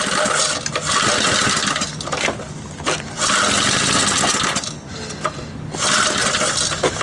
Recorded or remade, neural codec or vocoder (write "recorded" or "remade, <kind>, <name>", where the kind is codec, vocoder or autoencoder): recorded